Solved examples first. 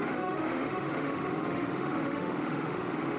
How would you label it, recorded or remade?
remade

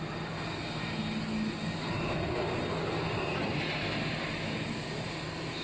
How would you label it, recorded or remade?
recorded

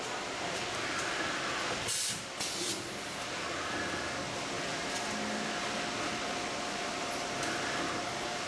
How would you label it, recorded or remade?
recorded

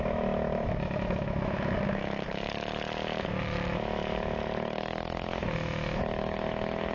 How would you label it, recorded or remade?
remade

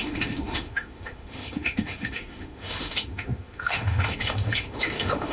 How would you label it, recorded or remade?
remade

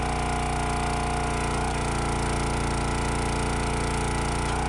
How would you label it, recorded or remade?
recorded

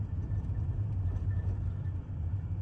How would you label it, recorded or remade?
recorded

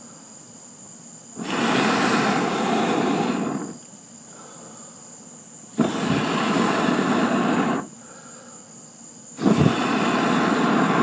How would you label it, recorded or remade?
recorded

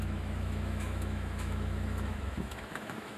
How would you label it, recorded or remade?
remade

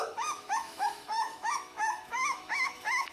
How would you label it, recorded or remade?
remade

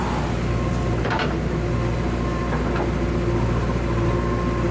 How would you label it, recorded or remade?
recorded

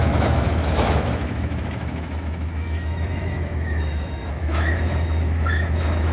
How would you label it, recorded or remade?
remade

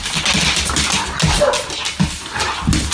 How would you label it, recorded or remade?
recorded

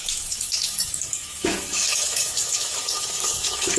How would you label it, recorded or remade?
remade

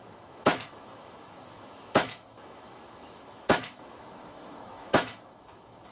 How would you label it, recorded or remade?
remade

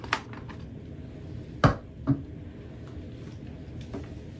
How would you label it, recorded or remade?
recorded